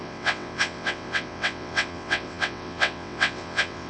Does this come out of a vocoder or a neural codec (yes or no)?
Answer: yes